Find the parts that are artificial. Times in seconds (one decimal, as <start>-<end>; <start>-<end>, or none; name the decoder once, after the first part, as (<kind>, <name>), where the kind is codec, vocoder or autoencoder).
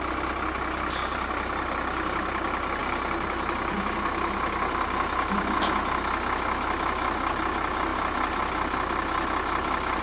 none